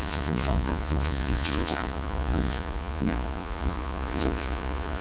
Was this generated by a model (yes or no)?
yes